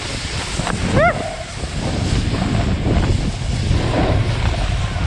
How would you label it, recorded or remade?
recorded